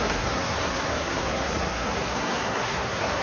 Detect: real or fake fake